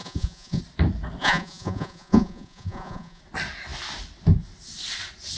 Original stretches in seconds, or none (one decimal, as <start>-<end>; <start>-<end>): 0.6-1.2; 3.2-5.4